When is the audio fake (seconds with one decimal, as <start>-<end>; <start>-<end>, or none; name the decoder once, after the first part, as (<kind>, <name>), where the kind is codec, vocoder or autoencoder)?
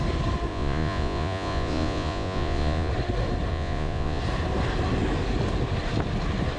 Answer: 0.5-2.9 (vocoder, Vocos); 3.5-4.2